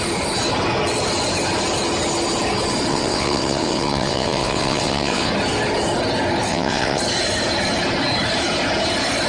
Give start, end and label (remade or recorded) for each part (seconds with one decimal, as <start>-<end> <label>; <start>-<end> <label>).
0.0-2.9 recorded; 2.9-5.3 remade; 5.3-6.5 recorded; 6.5-7.0 remade; 7.0-9.3 recorded